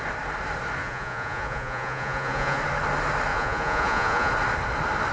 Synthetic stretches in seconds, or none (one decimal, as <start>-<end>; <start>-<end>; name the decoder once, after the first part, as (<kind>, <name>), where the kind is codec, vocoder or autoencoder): 0.8-2.6 (vocoder, Vocos); 3.3-4.3